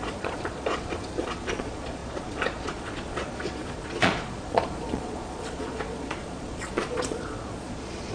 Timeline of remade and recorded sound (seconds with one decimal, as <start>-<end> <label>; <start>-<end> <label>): 0.0-8.1 remade